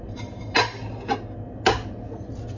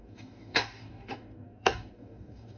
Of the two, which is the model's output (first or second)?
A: second